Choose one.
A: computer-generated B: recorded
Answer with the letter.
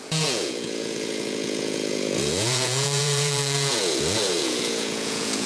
A